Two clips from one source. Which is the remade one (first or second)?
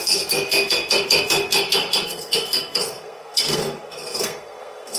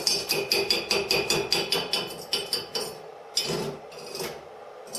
first